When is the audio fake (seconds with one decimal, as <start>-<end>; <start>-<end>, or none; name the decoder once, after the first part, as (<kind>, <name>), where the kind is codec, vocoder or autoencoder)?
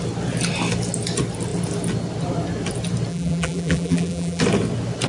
3.1-4.4 (vocoder, BigVGAN v2)